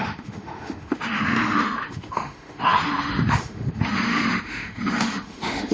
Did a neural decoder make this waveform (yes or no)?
yes